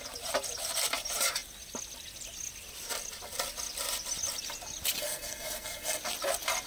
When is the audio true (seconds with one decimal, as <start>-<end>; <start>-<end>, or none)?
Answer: 0.0-5.0; 6.0-6.7